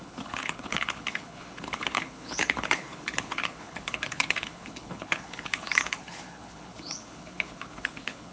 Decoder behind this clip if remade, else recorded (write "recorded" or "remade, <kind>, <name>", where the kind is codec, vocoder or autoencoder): remade, codec, HILCodec